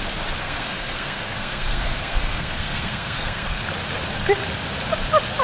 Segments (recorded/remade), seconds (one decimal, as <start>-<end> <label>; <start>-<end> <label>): 0.0-0.4 recorded; 0.4-3.6 remade; 3.6-5.4 recorded